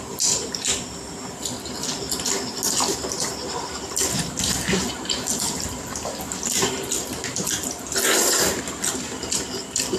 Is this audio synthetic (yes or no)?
no